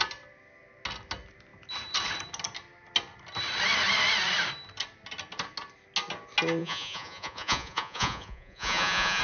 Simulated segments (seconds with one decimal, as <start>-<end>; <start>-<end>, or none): 6.6-9.2